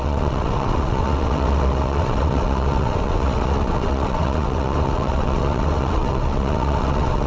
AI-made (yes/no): yes